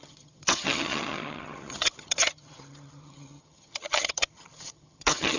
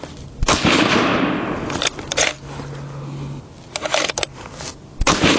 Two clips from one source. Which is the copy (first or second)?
first